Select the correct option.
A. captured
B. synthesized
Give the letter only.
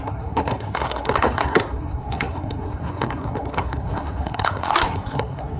B